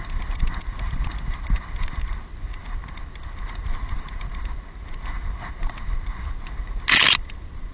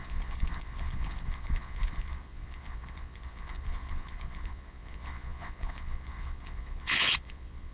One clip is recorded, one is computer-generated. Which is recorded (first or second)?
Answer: first